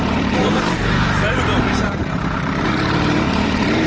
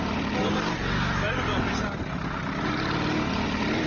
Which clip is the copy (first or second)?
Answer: first